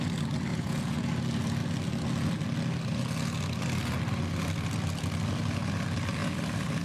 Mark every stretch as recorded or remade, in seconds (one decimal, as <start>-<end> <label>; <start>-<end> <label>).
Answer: 0.0-0.5 recorded; 0.5-1.1 remade; 1.1-6.8 recorded